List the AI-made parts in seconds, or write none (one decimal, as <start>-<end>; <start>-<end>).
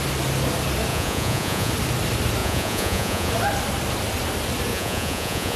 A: 0.9-1.7; 2.4-3.3; 4.7-5.6